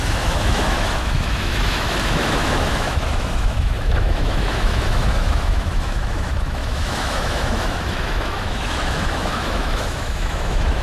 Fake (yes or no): yes